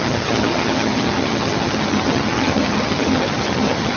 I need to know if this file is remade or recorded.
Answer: remade